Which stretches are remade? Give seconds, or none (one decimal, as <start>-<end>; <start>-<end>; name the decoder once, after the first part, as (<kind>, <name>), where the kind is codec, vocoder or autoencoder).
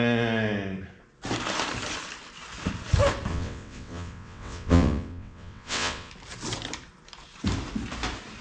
3.3-6.1 (vocoder, WaveNeXt)